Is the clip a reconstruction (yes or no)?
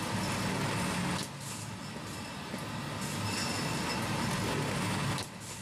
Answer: no